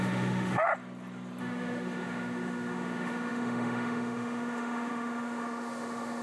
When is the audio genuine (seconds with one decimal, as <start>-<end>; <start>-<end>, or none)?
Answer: 0.7-1.4